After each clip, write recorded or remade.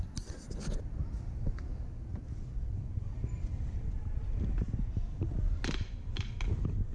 recorded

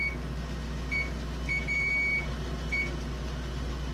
remade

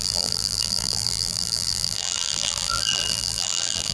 remade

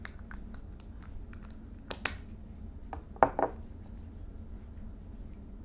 recorded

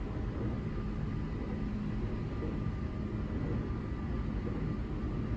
recorded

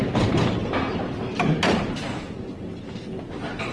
recorded